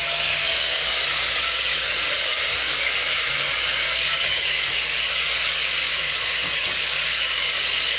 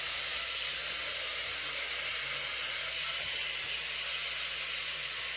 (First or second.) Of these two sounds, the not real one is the first